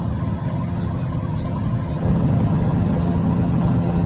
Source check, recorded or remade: remade